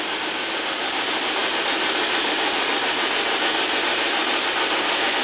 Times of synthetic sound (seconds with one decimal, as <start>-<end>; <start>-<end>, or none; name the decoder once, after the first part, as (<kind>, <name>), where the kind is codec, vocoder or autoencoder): 0.0-1.4 (vocoder, BigVGAN v2); 4.5-5.2